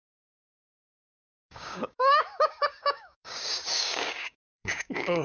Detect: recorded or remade remade